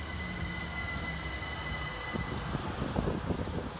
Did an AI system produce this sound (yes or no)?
no